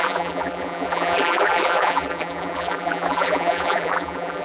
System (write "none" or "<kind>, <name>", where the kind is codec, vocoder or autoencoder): vocoder, BigVGAN v2